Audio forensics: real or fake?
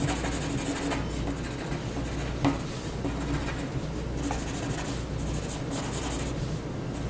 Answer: real